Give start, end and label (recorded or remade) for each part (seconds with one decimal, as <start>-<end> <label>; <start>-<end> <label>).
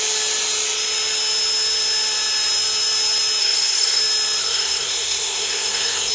0.0-3.4 recorded; 3.4-4.0 remade; 4.0-4.4 recorded; 4.4-6.1 remade